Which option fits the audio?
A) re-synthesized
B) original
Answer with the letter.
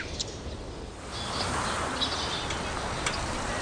B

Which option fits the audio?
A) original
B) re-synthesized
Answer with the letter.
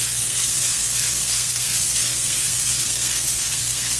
B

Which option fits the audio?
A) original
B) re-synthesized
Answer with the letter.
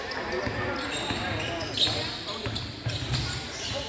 A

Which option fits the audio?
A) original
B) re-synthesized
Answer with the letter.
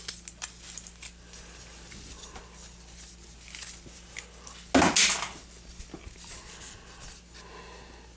A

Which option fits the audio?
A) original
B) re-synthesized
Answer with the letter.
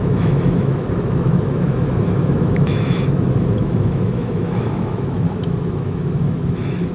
B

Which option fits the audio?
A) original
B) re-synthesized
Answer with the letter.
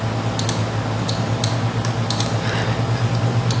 A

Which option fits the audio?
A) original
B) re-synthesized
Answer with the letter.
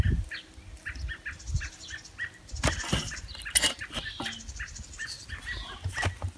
A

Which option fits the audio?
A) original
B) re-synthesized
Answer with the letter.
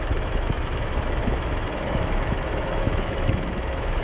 B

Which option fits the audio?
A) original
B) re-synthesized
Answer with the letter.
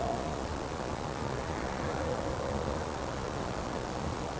B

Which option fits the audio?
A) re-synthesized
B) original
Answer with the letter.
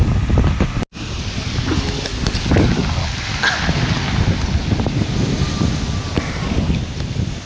B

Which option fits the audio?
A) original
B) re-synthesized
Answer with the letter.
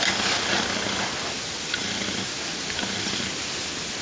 A